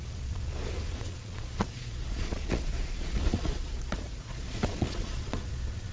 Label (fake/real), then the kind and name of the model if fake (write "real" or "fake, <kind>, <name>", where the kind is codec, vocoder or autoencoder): fake, vocoder, Vocos